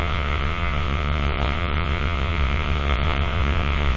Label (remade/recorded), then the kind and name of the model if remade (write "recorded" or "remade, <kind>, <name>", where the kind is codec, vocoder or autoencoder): remade, vocoder, WaveNeXt